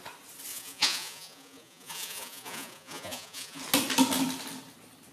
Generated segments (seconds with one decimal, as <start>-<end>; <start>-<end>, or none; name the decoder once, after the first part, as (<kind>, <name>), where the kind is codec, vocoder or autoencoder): 0.5-3.6 (vocoder, Vocos)